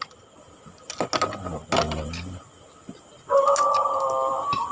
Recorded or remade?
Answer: recorded